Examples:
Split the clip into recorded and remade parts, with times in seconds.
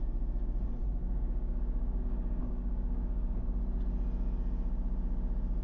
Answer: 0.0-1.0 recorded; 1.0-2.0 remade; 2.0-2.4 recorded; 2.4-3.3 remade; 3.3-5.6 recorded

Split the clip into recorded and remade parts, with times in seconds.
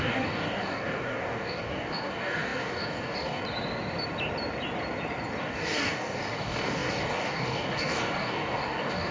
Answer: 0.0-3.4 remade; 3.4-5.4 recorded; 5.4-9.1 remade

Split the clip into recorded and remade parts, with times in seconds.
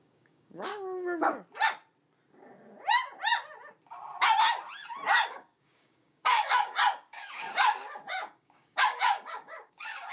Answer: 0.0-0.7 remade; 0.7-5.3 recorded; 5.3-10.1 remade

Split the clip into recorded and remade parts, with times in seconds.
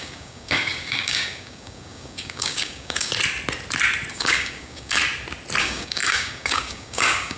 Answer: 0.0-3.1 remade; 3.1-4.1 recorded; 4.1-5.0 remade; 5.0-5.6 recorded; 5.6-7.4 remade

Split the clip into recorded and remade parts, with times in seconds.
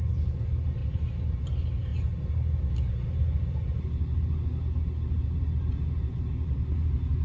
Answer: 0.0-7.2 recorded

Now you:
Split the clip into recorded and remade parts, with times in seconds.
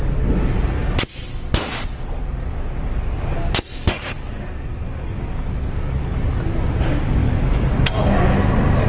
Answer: 0.0-3.8 recorded; 3.8-5.4 remade; 5.4-7.2 recorded; 7.2-7.8 remade; 7.8-8.9 recorded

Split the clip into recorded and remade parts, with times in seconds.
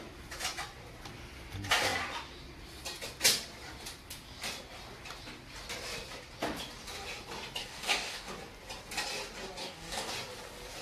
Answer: 0.0-7.6 recorded; 7.6-8.3 remade; 8.3-9.6 recorded; 9.6-10.1 remade; 10.1-10.8 recorded